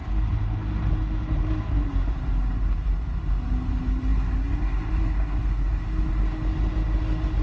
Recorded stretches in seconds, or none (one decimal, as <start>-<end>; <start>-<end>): 0.0-7.4